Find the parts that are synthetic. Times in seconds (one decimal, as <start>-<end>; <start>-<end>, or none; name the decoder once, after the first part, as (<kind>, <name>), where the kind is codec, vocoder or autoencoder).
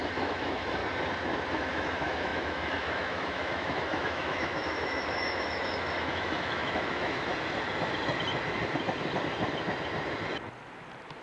0.0-0.8 (autoencoder, DAC-VAE); 1.5-7.3